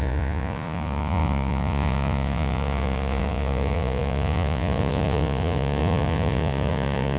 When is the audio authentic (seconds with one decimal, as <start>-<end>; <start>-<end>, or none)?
none